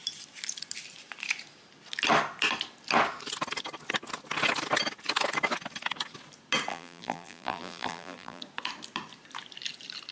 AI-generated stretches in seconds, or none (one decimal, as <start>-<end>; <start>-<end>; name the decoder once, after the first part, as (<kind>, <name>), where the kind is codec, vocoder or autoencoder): 6.7-8.4 (vocoder, BigVGAN v2)